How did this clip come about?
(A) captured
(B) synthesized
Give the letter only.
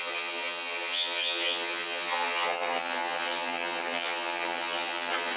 B